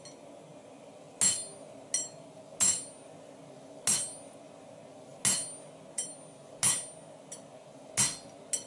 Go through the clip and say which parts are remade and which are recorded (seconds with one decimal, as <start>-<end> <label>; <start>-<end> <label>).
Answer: 0.0-8.7 recorded